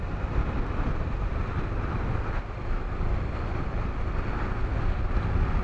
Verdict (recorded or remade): recorded